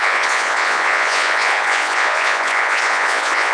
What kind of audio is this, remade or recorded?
remade